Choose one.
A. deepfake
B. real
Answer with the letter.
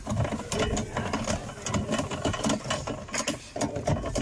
B